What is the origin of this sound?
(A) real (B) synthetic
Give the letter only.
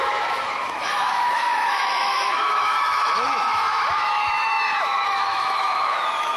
B